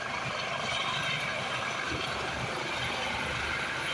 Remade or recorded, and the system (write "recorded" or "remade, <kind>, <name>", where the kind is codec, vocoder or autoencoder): recorded